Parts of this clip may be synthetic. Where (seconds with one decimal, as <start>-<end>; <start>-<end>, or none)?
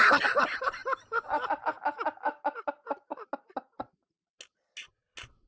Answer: none